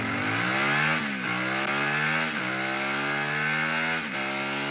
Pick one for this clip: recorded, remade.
recorded